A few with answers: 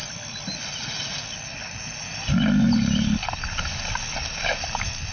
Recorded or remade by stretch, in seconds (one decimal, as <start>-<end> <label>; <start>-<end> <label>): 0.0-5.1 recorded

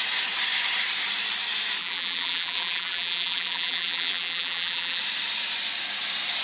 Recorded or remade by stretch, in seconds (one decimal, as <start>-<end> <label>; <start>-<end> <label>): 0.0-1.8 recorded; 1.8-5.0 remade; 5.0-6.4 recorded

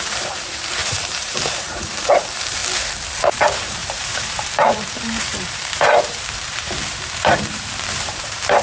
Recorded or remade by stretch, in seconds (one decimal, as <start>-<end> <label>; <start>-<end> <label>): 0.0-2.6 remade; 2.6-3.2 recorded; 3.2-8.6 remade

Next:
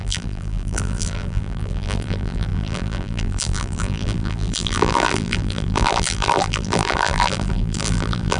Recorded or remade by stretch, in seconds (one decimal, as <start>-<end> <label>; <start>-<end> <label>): 0.0-8.4 remade

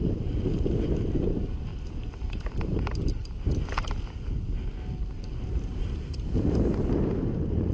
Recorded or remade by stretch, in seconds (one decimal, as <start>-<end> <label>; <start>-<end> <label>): 0.0-1.7 remade; 1.7-2.3 recorded; 2.3-2.7 remade; 2.7-5.1 recorded; 5.1-7.7 remade